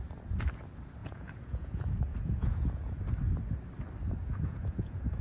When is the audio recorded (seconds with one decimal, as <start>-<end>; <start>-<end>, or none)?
0.0-1.0; 3.0-4.2